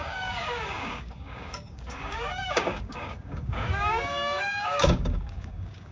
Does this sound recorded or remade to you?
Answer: remade